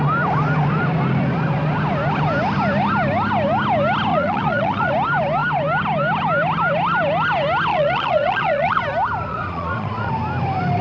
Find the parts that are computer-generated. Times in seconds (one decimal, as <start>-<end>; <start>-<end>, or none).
4.1-4.9; 7.7-8.8; 9.3-10.1